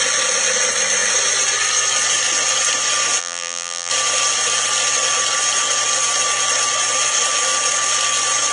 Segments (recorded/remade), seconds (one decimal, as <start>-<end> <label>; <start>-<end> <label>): 0.0-3.2 recorded; 3.2-3.9 remade; 3.9-8.5 recorded